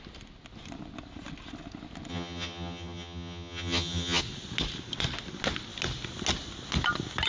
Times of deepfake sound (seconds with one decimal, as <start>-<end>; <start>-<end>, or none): 2.1-4.2